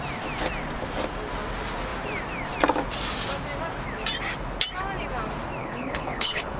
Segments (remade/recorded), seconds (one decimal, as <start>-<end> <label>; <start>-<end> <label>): 0.0-5.6 recorded; 5.6-6.6 remade